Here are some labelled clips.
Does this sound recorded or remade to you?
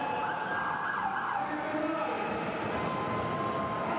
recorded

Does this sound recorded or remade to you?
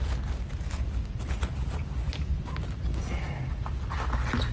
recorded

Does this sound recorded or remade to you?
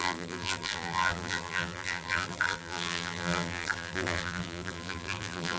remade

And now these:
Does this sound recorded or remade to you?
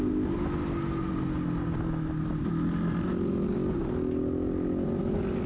recorded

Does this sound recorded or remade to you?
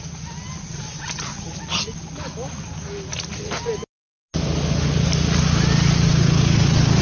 recorded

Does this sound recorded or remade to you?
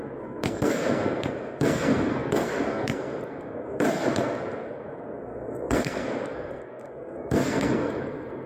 remade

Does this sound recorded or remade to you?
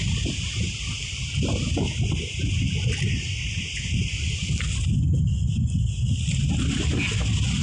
recorded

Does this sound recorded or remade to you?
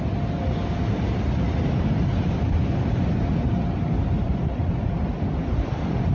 recorded